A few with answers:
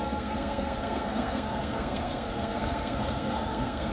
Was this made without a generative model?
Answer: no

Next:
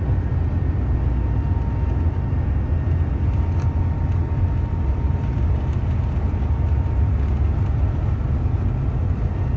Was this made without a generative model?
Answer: yes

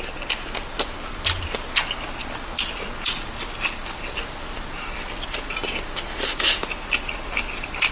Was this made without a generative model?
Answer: yes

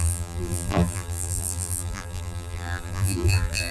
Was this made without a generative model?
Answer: no